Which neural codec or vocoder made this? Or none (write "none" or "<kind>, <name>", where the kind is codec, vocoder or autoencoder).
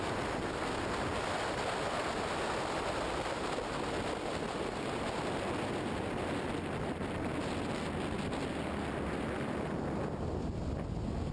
none